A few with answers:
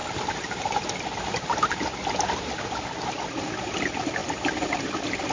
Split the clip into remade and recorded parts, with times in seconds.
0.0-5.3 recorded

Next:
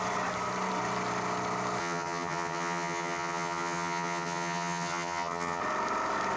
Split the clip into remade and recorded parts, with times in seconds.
0.0-1.8 recorded; 1.8-5.6 remade; 5.6-6.4 recorded

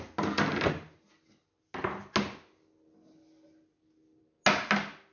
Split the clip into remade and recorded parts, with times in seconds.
0.0-5.1 recorded

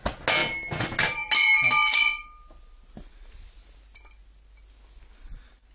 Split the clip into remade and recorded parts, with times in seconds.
0.0-5.7 recorded

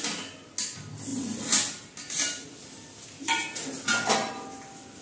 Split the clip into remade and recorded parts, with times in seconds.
0.0-5.0 recorded

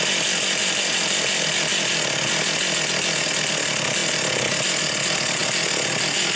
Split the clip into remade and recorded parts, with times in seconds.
0.0-6.4 recorded

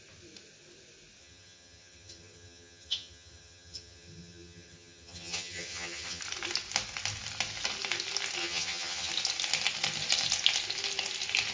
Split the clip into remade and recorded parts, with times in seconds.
0.0-1.2 recorded; 1.2-6.2 remade; 6.2-8.4 recorded; 8.4-9.1 remade; 9.1-11.5 recorded

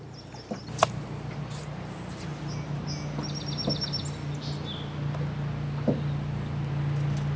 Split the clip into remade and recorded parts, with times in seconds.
0.0-7.4 recorded